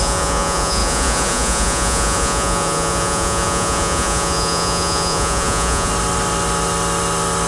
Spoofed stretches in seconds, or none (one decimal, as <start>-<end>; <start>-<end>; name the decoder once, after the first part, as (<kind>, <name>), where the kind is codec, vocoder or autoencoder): 0.0-5.9 (vocoder, Vocos)